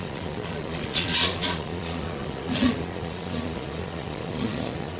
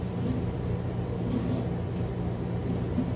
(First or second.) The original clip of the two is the second